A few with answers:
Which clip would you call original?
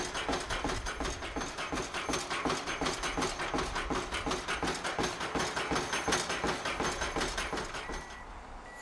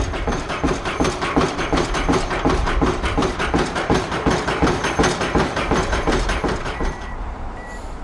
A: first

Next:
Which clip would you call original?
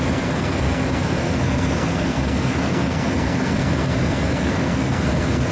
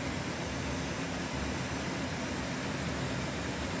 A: second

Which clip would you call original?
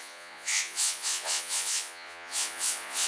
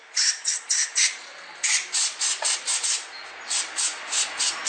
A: second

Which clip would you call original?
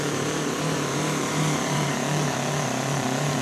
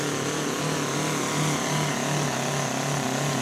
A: second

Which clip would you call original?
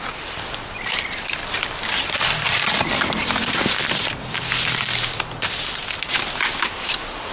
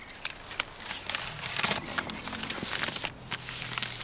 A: second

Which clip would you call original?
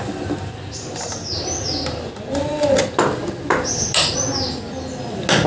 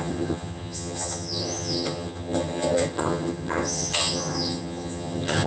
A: first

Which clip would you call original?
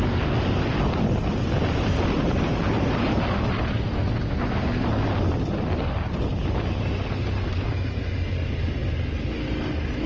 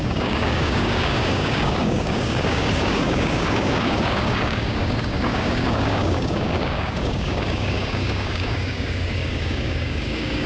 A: first